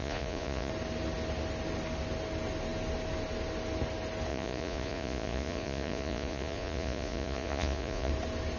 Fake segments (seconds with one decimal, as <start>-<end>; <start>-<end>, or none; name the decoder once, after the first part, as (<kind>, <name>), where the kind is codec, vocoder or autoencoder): 0.0-0.7 (vocoder, Vocos); 4.3-8.1